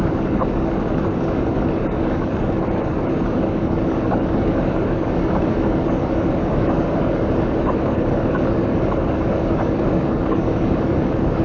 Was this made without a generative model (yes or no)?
no